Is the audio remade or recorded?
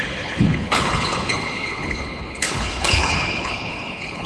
remade